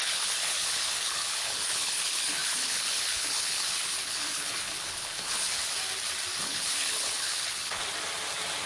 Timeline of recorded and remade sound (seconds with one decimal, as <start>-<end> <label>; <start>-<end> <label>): 0.0-5.6 remade; 5.6-6.4 recorded; 6.4-7.8 remade; 7.8-8.7 recorded